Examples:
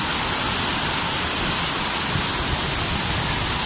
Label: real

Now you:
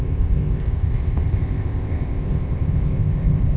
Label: fake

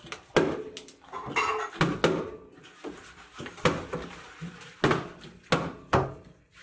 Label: real